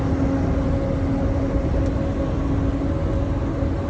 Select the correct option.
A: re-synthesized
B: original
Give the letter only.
B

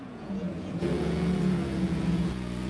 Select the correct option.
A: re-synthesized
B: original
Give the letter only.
A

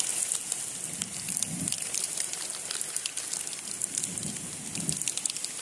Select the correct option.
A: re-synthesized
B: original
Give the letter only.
B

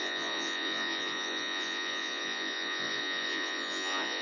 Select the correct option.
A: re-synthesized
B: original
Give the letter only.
A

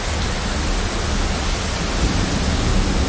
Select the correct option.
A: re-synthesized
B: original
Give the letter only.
B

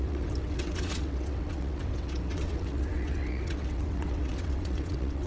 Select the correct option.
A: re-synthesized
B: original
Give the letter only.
A